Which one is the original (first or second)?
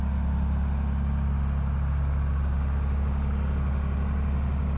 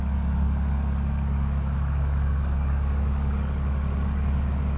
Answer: first